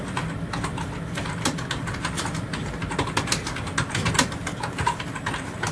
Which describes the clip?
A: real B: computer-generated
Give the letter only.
A